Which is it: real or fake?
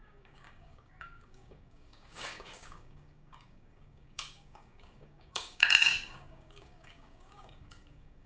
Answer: fake